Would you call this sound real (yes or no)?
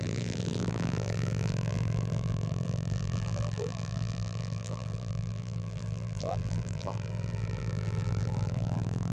no